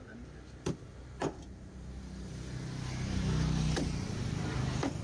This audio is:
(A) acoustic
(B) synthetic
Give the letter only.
A